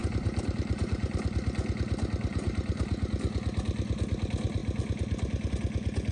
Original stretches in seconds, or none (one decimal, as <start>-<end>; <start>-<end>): 1.2-2.3; 3.1-6.1